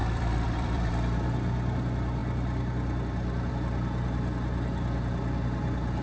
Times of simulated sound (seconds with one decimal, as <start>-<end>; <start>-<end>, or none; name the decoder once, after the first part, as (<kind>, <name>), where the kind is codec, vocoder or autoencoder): 0.0-0.9 (vocoder, BigVGAN v2)